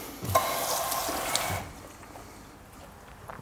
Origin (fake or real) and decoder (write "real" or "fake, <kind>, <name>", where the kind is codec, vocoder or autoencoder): real